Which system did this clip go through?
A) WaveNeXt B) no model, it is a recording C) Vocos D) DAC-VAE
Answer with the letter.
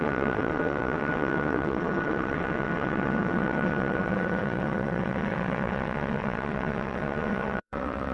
A